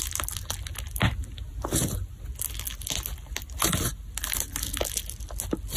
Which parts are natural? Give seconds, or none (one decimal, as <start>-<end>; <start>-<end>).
0.0-5.8